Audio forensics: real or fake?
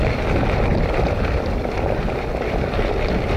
real